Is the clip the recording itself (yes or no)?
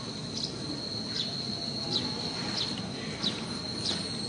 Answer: yes